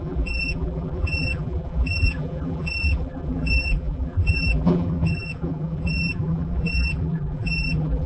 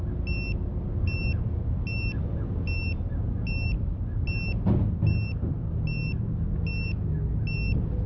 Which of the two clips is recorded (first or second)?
second